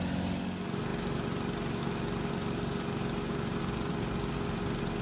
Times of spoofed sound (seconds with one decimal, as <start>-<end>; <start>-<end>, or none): none